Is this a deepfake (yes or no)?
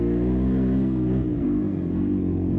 yes